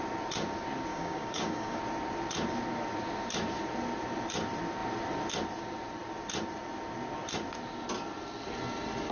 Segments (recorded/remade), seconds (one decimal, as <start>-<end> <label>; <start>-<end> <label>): 0.0-0.9 recorded; 0.9-1.8 remade; 1.8-9.1 recorded

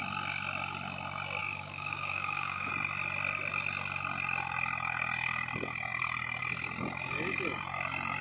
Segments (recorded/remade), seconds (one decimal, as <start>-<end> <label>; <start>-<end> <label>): 0.0-1.4 recorded; 1.4-2.7 remade; 2.7-8.2 recorded

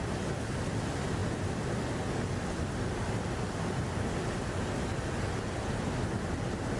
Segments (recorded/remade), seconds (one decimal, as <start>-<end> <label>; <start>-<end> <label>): 0.0-6.8 recorded

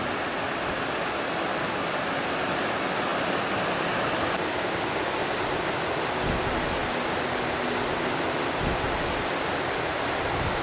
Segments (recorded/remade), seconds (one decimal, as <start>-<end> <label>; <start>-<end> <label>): 0.0-10.6 recorded

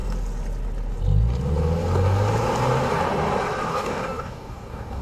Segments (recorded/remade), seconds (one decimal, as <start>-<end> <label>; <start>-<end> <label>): 0.0-3.7 recorded; 3.7-5.0 remade

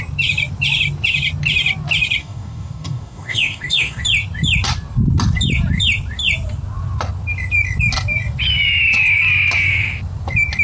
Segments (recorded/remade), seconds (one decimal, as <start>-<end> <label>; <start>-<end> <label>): 0.0-2.2 recorded; 2.2-4.0 remade; 4.0-10.6 recorded